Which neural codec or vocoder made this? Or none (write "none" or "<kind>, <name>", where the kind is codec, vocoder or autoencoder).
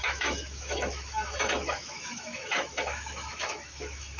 autoencoder, DAC-VAE